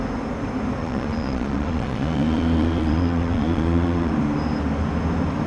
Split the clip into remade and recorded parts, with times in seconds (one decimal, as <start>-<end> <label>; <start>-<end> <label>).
0.0-0.8 recorded; 0.8-4.1 remade; 4.1-5.5 recorded